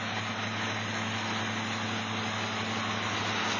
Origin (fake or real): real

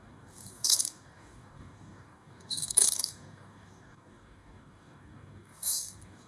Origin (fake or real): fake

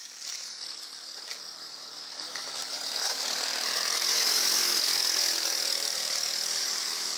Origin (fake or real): fake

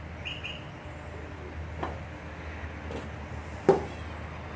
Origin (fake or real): real